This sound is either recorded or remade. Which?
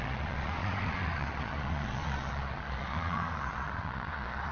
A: remade